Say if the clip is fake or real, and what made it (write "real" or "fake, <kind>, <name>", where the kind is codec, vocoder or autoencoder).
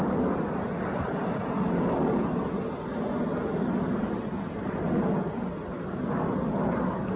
real